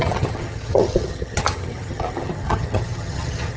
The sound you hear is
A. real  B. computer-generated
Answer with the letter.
B